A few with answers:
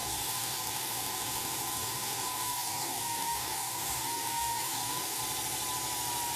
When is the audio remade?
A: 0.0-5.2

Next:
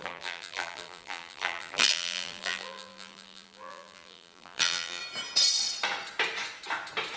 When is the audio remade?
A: 0.0-5.0

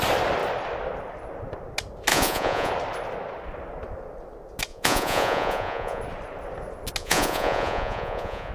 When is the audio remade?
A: 2.1-2.7; 4.7-6.0; 7.0-8.5

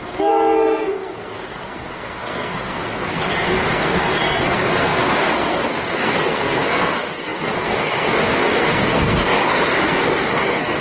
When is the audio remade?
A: 0.0-10.8

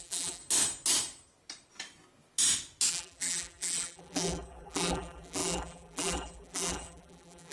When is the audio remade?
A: 0.0-0.4; 2.9-7.5

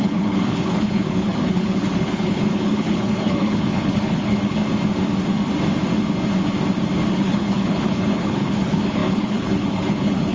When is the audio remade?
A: 0.0-4.6; 7.1-10.3

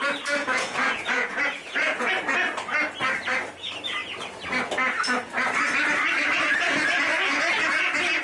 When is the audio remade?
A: 0.4-2.1